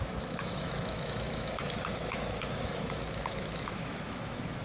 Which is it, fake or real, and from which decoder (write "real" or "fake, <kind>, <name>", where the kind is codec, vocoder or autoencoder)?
fake, autoencoder, DAC-VAE